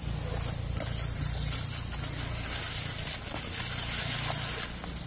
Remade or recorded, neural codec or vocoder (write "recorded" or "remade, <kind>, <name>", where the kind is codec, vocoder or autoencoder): recorded